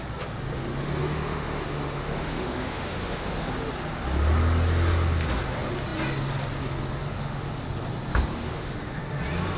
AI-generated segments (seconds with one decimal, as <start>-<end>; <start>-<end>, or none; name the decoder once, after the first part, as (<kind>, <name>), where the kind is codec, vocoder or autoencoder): 1.0-3.5 (autoencoder, DAC-VAE); 7.1-7.6; 8.3-9.0